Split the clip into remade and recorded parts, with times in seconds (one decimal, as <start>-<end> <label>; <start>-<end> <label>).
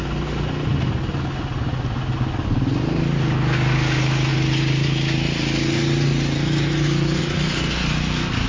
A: 0.0-8.5 recorded